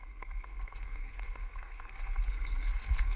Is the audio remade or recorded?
remade